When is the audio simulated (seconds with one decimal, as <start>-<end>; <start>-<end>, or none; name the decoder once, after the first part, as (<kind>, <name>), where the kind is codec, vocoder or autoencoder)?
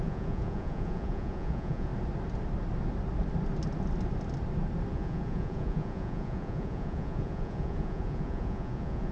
0.0-1.9 (vocoder, Vocos); 4.9-9.1